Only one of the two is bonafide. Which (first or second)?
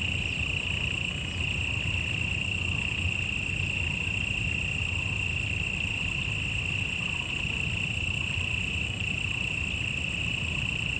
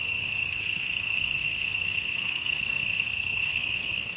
first